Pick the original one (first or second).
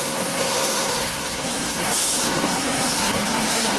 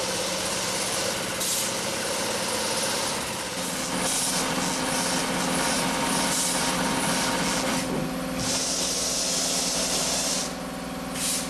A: second